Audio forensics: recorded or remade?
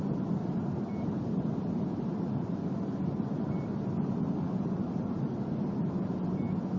recorded